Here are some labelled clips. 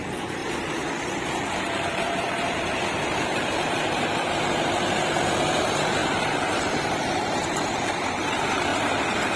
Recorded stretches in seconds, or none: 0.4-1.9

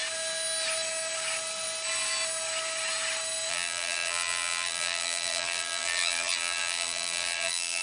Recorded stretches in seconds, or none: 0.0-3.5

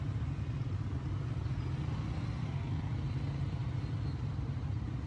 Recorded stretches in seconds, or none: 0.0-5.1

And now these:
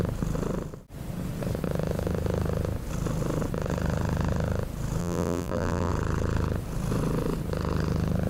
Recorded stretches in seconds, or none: 0.0-5.0; 5.9-8.3